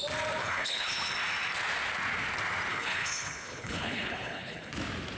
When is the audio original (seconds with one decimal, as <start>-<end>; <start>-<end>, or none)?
0.0-0.4; 1.1-2.7; 4.7-5.2

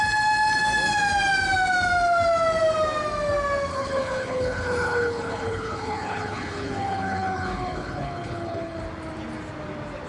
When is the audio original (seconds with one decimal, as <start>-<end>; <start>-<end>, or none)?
0.0-3.7; 8.8-10.1

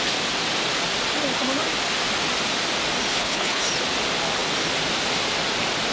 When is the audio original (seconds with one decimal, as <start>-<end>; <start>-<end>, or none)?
0.0-3.1; 3.7-5.9

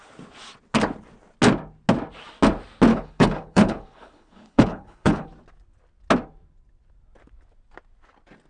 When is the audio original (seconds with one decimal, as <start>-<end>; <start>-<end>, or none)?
0.0-2.9; 5.3-8.5

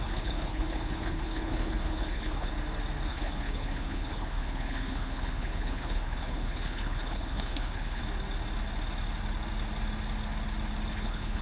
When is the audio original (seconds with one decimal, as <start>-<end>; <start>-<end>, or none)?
2.5-3.1; 8.0-10.9

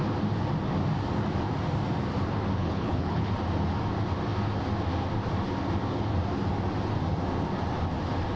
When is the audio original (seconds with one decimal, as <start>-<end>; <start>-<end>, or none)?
0.0-2.6; 3.3-8.4